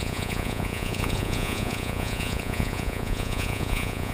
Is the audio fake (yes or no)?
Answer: yes